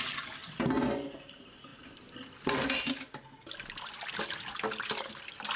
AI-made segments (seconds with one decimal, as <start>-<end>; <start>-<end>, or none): none

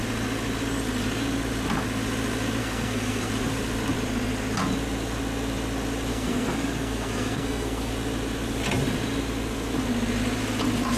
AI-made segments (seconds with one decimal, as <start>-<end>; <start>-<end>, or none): 2.6-3.3; 6.1-7.9

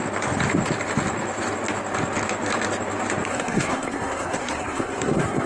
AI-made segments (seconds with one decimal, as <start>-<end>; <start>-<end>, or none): 3.3-5.5

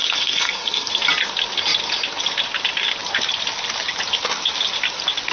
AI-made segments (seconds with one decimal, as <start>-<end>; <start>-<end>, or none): 0.0-0.9

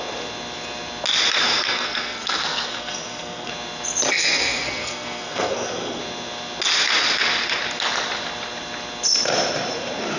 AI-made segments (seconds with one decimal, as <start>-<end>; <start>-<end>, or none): 1.4-3.5; 4.1-6.0

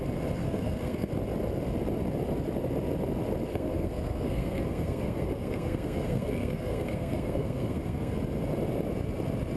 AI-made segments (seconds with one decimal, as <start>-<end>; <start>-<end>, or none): 0.4-1.1; 3.5-8.1